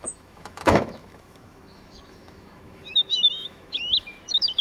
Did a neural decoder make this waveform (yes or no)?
yes